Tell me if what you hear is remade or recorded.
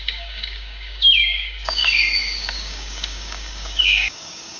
remade